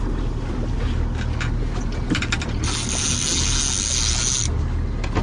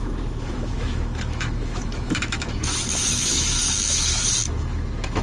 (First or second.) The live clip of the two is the first